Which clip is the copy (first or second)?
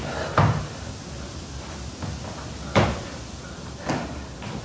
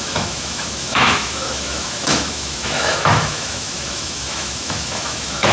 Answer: second